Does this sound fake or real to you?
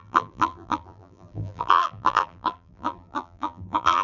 fake